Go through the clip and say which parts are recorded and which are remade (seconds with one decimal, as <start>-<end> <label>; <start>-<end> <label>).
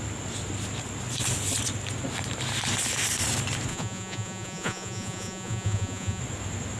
0.0-3.7 recorded; 3.7-6.2 remade; 6.2-6.8 recorded